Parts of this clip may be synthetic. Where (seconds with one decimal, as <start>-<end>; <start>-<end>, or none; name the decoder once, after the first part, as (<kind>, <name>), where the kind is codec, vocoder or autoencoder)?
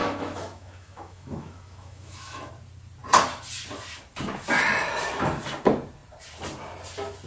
0.0-2.5 (autoencoder, DAC-VAE)